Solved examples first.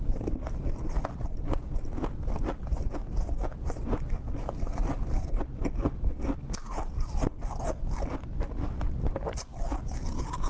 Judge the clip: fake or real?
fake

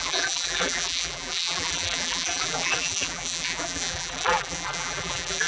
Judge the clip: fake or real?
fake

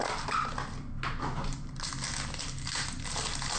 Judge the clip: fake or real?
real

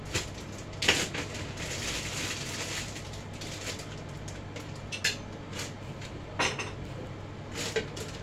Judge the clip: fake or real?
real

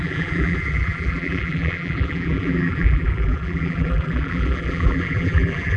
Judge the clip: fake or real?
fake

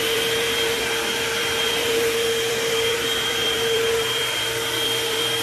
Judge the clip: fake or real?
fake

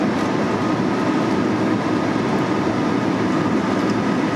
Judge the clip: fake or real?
real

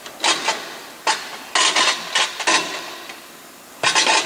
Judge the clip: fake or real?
real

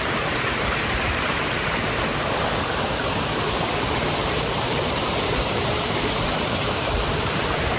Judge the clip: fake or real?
fake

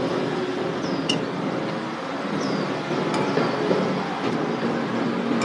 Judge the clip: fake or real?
real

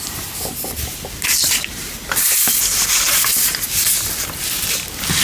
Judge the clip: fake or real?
real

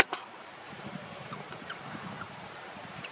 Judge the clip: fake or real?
fake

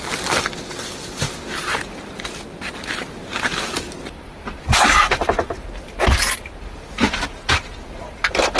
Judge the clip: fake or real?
real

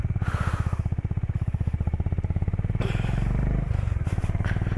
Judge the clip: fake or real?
fake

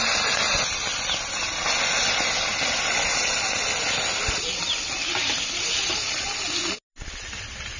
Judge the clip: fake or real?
real